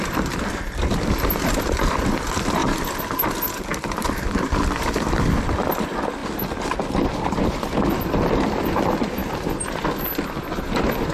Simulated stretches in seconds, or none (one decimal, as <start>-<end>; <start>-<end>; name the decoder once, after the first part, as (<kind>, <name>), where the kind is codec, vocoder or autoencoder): 0.0-6.2 (vocoder, BigVGAN v2); 8.0-9.2; 9.7-11.1